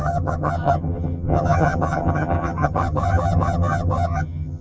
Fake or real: fake